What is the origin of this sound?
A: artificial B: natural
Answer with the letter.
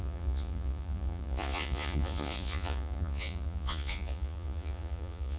A